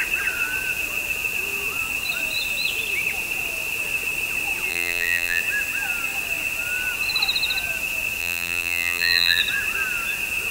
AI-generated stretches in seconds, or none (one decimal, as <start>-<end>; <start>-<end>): 4.7-5.4; 8.2-9.4